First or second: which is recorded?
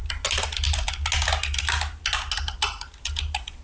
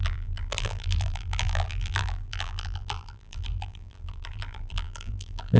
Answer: first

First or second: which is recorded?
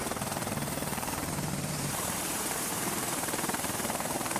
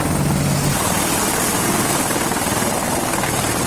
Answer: second